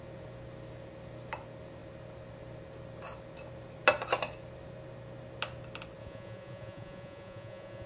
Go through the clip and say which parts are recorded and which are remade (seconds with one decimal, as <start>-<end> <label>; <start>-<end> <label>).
0.0-6.0 recorded; 6.0-7.9 remade